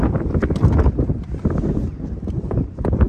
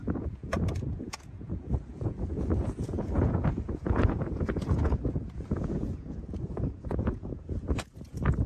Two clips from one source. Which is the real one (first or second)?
first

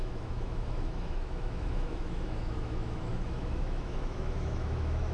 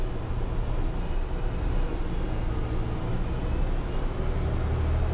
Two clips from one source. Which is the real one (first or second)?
second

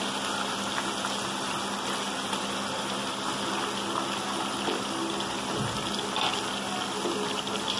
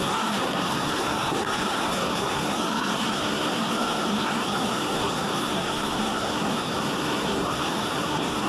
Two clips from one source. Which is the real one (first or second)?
first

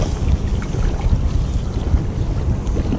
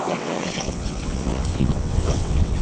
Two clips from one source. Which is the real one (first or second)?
first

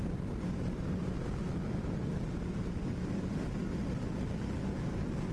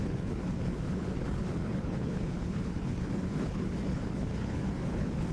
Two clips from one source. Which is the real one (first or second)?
first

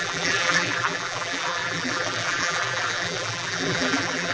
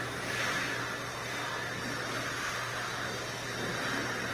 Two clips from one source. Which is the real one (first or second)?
second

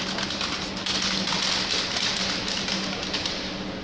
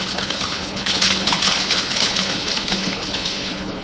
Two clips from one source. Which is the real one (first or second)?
first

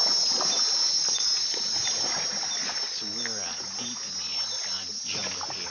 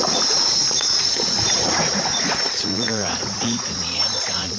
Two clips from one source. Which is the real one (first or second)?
first